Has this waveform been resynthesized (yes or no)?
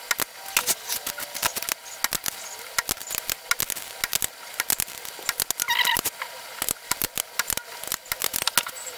no